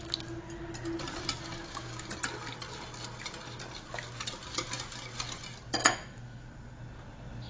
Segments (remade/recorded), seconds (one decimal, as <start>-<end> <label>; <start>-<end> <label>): 0.0-1.6 recorded; 1.6-2.1 remade; 2.1-7.5 recorded